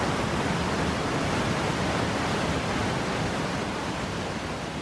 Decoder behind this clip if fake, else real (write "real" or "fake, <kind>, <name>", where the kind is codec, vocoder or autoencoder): real